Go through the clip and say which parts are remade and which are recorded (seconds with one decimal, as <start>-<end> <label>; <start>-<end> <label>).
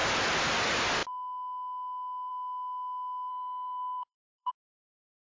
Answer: 0.0-3.3 recorded; 3.3-4.5 remade; 4.5-5.3 recorded